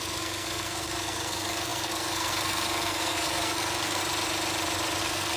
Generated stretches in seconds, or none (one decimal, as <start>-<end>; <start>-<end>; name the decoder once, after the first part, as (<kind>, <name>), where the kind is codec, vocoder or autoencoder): 0.0-4.0 (codec, SNAC); 5.0-5.4